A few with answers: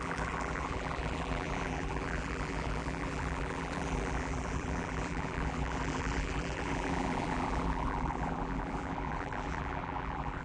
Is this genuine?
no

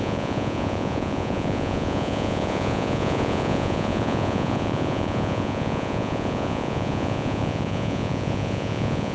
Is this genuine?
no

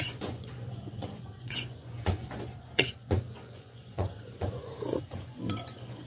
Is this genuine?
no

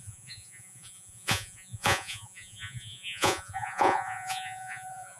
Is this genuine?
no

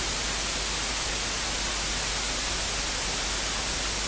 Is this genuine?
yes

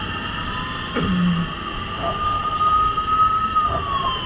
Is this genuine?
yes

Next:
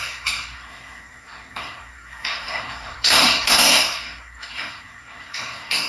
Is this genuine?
no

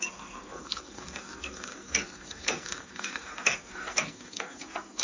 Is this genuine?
no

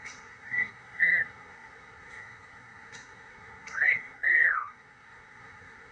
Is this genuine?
no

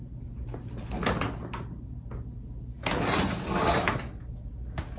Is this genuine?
yes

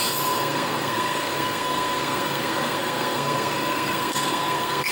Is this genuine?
no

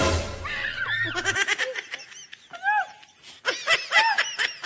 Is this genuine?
yes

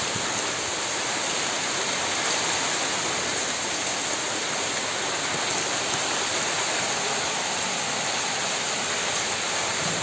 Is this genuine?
yes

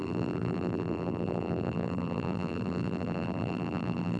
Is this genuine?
no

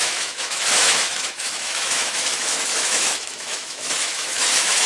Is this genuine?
no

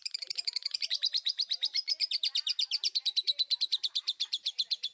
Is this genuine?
no